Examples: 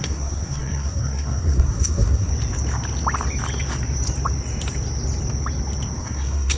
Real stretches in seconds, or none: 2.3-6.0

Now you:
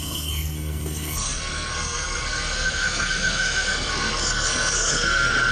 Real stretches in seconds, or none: none